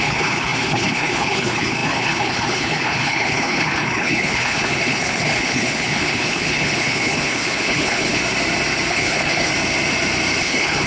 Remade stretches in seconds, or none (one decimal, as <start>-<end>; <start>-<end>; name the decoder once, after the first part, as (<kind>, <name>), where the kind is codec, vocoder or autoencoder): 0.0-8.2 (codec, HILCodec); 8.9-9.5; 10.4-10.9